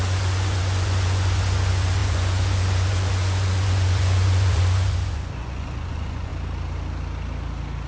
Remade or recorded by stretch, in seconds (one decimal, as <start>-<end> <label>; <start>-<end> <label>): 0.0-6.3 remade; 6.3-7.9 recorded